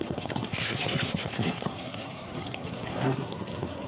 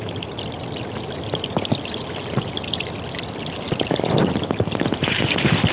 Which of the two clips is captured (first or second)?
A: second